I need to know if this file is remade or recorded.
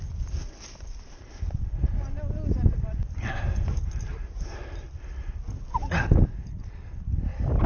recorded